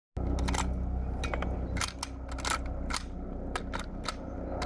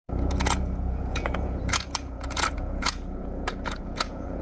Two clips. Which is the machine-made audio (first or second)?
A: second